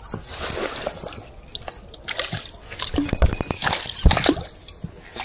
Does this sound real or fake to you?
real